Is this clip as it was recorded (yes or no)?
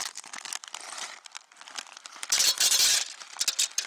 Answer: yes